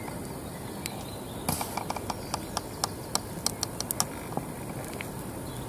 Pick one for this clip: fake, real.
real